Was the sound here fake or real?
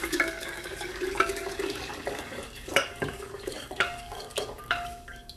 fake